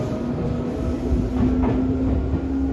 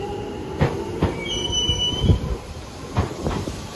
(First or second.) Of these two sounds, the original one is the first